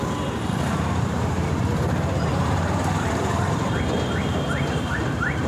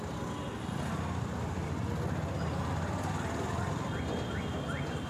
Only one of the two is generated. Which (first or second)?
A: first